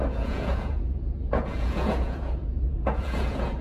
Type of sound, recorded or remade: remade